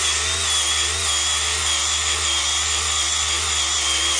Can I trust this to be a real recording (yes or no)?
yes